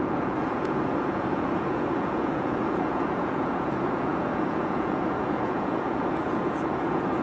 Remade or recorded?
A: remade